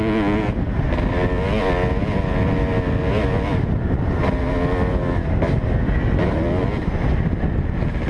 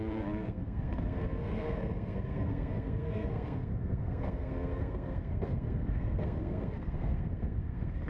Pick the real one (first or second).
first